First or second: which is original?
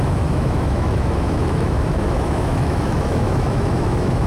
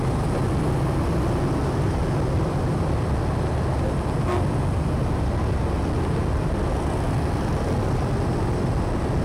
second